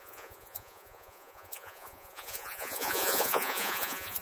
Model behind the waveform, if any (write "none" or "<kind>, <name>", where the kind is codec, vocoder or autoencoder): vocoder, Vocos